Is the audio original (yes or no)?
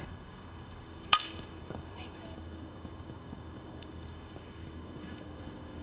no